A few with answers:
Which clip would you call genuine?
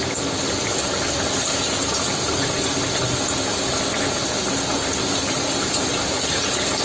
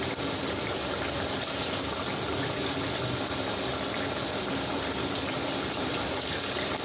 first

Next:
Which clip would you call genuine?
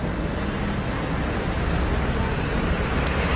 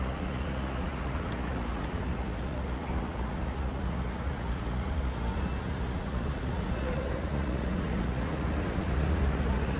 first